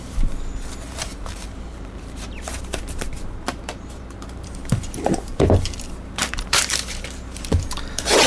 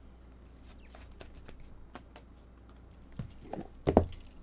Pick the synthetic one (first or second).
first